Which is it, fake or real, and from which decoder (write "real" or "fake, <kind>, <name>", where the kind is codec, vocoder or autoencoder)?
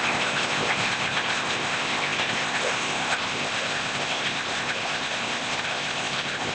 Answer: fake, codec, ZipCodec